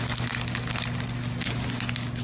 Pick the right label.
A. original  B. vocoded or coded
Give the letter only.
A